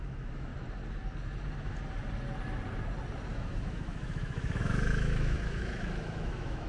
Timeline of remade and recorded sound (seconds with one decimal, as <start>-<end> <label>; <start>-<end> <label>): 0.0-0.5 remade; 0.5-3.3 recorded; 3.3-6.7 remade